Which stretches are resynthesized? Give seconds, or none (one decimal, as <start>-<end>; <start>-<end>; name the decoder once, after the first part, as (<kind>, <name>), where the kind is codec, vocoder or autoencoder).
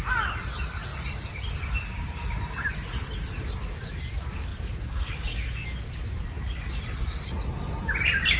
0.9-2.7 (vocoder, BigVGAN v2)